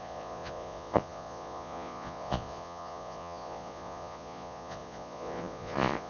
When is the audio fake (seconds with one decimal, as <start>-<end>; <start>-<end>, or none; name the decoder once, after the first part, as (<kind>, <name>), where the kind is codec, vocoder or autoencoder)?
0.0-6.1 (vocoder, Vocos)